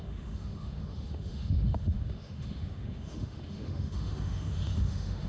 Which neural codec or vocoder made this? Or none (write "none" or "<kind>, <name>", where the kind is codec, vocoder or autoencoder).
autoencoder, DAC-VAE